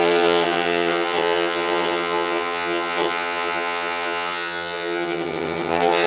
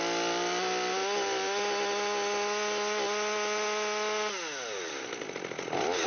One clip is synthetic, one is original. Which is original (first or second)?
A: second